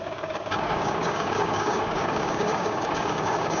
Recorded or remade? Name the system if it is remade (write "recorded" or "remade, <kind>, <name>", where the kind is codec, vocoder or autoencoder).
remade, codec, DAC